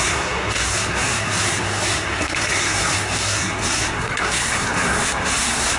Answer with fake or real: fake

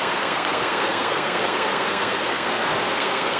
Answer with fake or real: fake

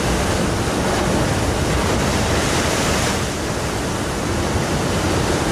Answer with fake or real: real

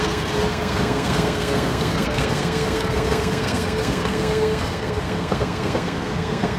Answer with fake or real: fake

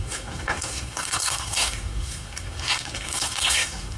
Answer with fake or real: fake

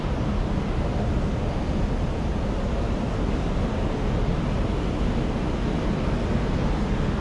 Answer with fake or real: real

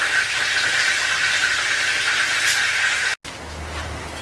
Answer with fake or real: real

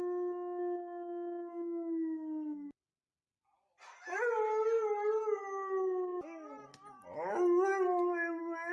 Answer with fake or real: real